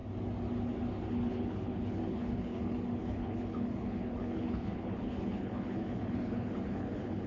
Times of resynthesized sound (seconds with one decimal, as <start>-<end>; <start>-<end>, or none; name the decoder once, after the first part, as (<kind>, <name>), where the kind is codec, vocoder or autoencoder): 1.1-7.3 (codec, HILCodec)